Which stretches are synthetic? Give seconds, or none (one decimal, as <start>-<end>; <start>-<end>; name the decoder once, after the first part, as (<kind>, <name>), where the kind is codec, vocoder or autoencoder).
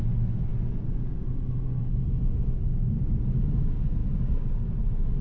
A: none